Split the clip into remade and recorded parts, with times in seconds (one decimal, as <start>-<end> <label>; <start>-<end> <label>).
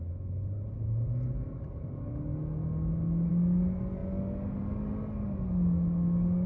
0.0-6.5 recorded